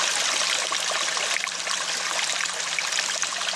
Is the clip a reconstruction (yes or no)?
no